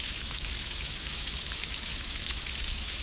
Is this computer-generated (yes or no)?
yes